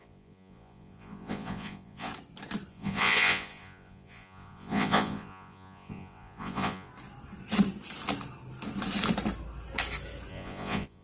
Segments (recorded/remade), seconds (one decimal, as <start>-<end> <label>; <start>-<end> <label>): 0.0-2.1 remade; 2.1-2.7 recorded; 2.7-6.9 remade; 6.9-10.3 recorded; 10.3-11.0 remade